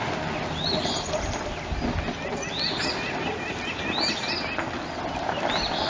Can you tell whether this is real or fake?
real